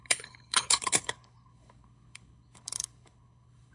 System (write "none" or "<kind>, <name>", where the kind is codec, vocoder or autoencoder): codec, HILCodec